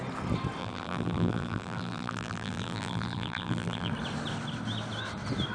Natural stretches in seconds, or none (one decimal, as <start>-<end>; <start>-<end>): 0.0-0.6; 3.9-5.5